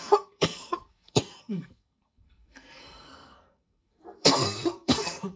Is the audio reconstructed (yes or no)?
yes